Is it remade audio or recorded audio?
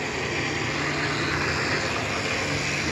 recorded